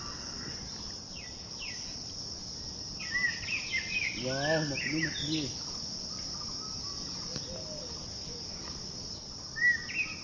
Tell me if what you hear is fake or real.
real